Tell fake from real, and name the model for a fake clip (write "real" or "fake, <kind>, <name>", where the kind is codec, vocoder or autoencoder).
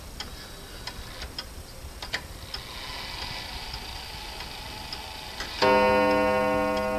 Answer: real